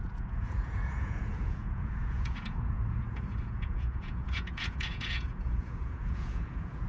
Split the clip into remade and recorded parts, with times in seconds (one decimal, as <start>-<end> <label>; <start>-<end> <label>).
0.0-6.9 remade